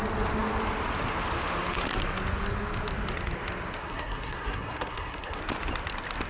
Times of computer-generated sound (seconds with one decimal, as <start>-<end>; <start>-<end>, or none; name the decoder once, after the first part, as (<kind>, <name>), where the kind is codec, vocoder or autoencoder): 3.8-5.4 (codec, SNAC)